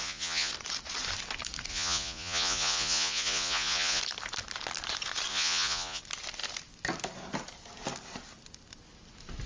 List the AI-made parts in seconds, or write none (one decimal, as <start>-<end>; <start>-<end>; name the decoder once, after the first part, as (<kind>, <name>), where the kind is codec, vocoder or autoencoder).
0.0-0.5 (vocoder, Vocos); 1.7-4.0; 5.3-6.0